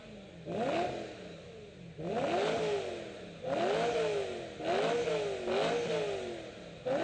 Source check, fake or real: real